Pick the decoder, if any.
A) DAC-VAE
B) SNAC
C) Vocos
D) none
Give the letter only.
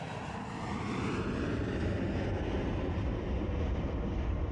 D